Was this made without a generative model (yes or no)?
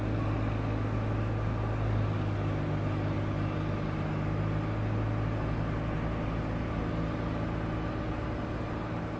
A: yes